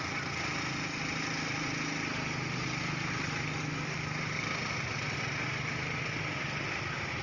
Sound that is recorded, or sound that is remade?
recorded